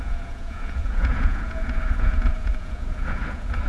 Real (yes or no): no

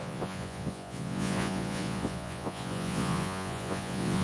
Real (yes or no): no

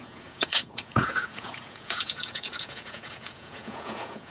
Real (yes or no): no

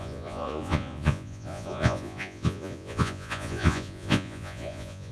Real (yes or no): no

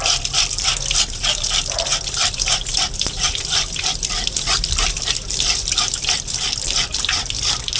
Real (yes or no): yes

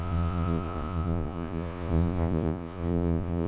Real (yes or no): no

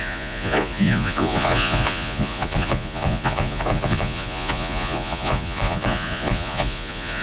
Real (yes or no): no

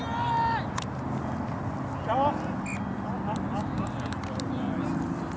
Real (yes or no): yes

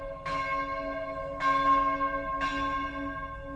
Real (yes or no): yes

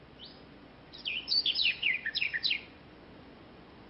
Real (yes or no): no